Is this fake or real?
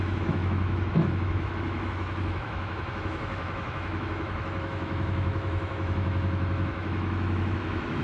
fake